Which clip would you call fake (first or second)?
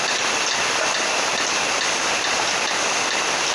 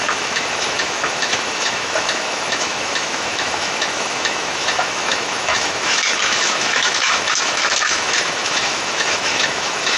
second